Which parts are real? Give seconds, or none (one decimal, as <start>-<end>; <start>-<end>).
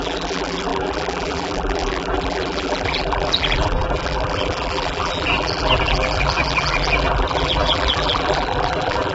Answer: none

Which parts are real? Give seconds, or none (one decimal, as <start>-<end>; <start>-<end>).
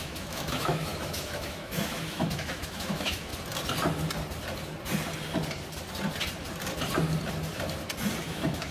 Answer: 3.3-8.2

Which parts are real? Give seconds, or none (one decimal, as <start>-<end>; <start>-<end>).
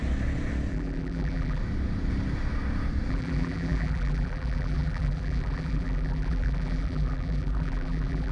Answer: 0.0-0.7; 1.6-3.1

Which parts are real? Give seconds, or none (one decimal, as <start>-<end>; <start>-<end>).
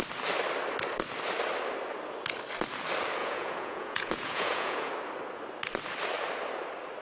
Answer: 0.0-3.2; 4.9-7.0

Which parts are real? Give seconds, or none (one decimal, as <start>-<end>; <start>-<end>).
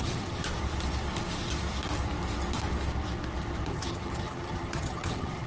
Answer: 0.4-3.7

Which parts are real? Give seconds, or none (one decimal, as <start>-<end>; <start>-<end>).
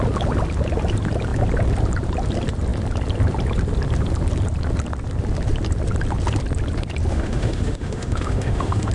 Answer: 0.0-7.1